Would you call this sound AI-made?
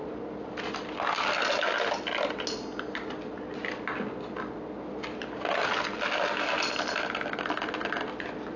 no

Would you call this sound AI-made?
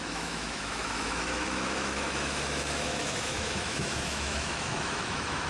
yes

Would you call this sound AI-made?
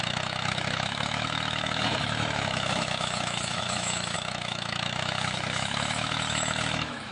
yes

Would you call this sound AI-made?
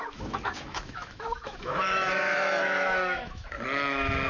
yes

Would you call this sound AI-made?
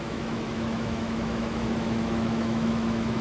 yes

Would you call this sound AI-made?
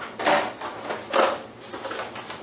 no